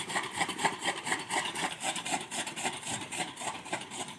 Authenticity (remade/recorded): remade